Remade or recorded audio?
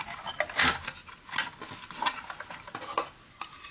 recorded